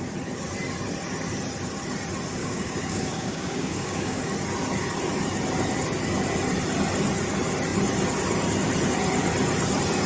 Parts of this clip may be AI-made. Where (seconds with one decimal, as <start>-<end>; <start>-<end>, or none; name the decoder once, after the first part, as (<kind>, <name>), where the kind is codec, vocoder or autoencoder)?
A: 2.4-4.2 (codec, DAC)